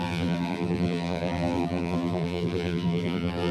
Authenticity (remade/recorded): remade